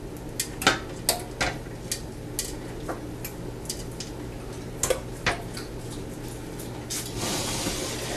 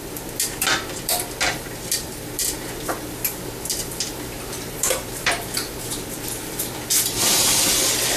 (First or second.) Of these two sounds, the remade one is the second